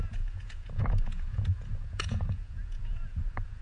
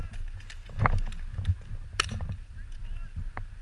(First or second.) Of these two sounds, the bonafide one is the second